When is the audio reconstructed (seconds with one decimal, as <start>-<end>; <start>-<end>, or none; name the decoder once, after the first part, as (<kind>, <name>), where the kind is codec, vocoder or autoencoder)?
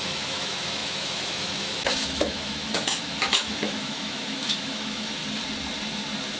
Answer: 0.0-5.2 (autoencoder, DAC-VAE)